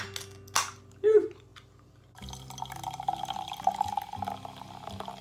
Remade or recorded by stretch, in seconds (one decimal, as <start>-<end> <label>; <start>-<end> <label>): 0.0-5.2 recorded